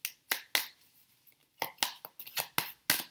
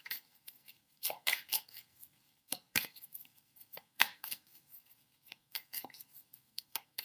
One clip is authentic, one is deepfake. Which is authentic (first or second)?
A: first